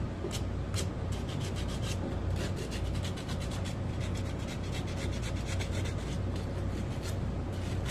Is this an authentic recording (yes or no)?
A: yes